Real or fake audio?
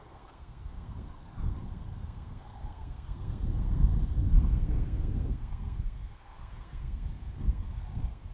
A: fake